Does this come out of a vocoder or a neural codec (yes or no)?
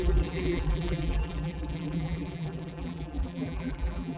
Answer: yes